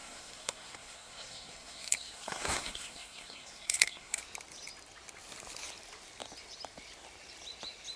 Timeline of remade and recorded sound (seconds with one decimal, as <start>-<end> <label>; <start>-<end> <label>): 0.0-4.2 remade; 4.2-8.0 recorded